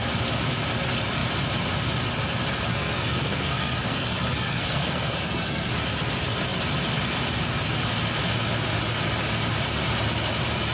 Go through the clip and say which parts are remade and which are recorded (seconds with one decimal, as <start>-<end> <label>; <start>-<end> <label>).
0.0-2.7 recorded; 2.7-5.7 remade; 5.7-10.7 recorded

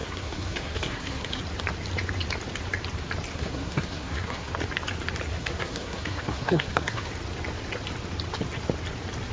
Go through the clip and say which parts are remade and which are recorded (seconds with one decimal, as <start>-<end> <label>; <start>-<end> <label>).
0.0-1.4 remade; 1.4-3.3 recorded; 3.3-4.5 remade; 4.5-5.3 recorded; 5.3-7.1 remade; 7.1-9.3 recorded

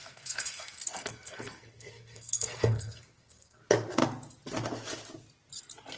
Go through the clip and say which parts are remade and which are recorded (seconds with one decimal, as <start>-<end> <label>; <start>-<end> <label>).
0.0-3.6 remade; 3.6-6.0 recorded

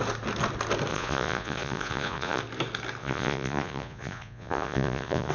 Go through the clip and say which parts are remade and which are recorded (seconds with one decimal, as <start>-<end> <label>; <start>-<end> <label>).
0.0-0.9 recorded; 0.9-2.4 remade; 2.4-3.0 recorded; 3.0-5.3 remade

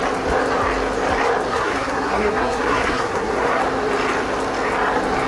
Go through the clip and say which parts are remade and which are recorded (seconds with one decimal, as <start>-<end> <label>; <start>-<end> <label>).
0.0-1.5 recorded; 1.5-3.6 remade; 3.6-5.3 recorded

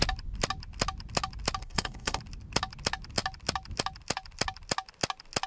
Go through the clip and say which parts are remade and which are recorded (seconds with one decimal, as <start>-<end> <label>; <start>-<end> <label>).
0.0-1.6 recorded; 1.6-2.2 remade; 2.2-5.5 recorded

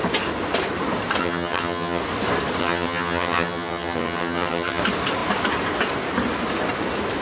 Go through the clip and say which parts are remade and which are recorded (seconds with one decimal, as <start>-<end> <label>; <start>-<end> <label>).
0.0-1.2 recorded; 1.2-2.0 remade; 2.0-2.6 recorded; 2.6-4.8 remade; 4.8-7.2 recorded

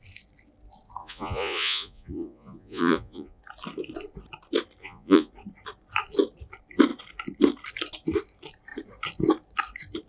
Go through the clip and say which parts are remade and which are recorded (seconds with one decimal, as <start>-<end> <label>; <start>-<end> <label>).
0.0-1.0 recorded; 1.0-3.4 remade; 3.4-4.8 recorded; 4.8-5.3 remade; 5.3-10.1 recorded